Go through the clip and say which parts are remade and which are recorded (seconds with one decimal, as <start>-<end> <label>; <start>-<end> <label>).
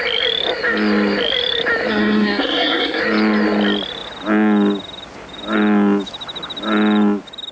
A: 0.0-1.9 recorded; 1.9-3.0 remade; 3.0-7.5 recorded